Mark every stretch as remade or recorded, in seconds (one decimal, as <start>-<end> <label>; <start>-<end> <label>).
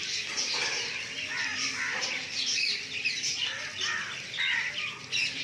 0.0-1.5 recorded; 1.5-4.7 remade; 4.7-5.4 recorded